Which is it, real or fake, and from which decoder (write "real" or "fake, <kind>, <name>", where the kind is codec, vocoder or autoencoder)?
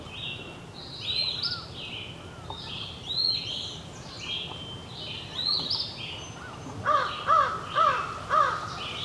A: real